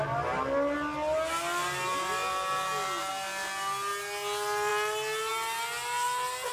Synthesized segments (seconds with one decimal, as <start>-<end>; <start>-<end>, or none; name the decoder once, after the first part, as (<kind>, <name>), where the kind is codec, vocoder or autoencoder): none